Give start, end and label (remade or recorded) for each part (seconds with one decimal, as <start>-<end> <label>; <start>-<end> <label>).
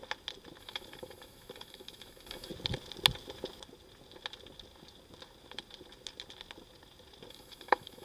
0.0-0.6 recorded; 0.6-2.5 remade; 2.5-7.3 recorded; 7.3-8.0 remade